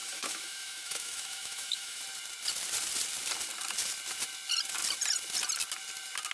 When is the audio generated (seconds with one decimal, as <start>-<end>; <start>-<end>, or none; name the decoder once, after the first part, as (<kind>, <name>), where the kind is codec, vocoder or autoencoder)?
0.0-2.0 (autoencoder, DAC-VAE)